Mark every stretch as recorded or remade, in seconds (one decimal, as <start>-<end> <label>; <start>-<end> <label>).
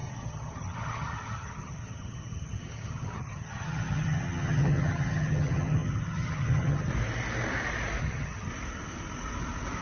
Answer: 0.0-6.9 remade; 6.9-8.0 recorded; 8.0-8.5 remade; 8.5-9.8 recorded